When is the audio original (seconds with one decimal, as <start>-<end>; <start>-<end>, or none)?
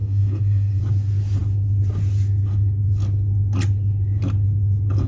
0.8-5.1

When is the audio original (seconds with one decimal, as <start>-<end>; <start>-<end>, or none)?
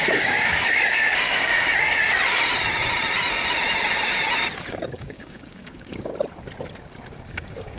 1.5-4.7; 6.1-7.3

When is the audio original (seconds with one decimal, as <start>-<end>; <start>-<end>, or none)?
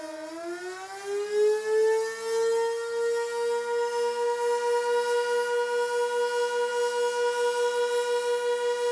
0.0-8.9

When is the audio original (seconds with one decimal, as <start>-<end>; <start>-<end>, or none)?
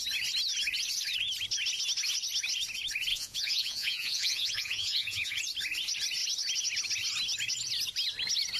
0.0-3.1; 5.4-8.6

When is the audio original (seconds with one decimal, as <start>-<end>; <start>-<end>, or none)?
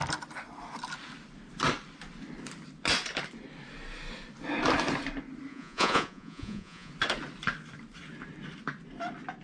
0.0-5.5; 6.9-9.4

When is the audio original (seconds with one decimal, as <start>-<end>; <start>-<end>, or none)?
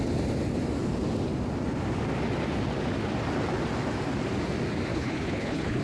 0.0-4.9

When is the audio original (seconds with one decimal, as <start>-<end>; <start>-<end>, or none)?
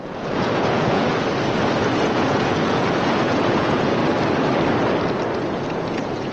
1.1-2.1; 4.0-5.7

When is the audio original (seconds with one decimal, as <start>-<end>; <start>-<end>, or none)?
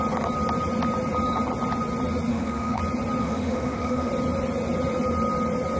0.0-2.3; 2.8-3.2; 4.1-5.8